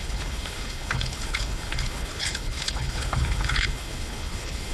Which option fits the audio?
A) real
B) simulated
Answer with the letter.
B